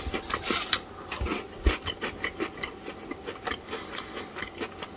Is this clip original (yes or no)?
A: yes